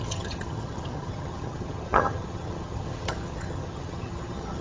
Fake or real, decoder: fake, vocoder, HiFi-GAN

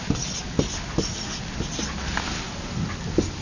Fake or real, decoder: real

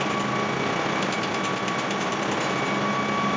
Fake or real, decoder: real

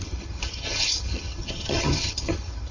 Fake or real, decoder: fake, vocoder, HiFi-GAN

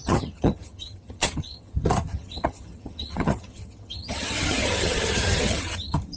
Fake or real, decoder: fake, vocoder, HiFi-GAN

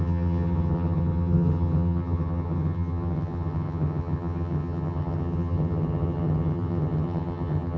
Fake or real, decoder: fake, vocoder, HiFi-GAN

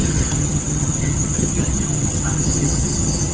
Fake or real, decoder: fake, vocoder, HiFi-GAN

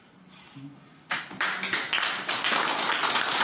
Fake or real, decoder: real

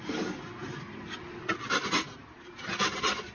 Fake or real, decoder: real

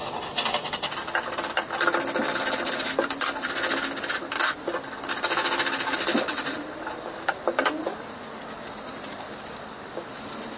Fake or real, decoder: real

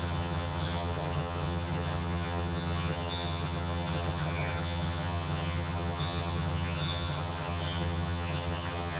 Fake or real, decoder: fake, vocoder, HiFi-GAN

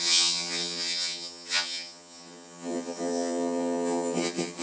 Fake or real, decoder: fake, vocoder, HiFi-GAN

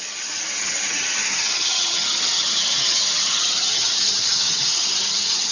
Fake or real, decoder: fake, vocoder, HiFi-GAN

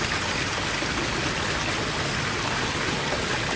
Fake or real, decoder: real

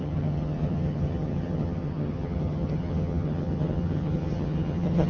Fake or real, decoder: fake, vocoder, HiFi-GAN